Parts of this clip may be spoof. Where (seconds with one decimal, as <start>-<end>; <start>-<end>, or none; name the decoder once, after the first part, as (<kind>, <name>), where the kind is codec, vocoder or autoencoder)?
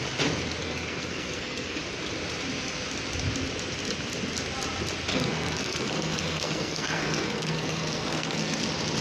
0.6-1.8 (codec, SNAC); 5.1-8.6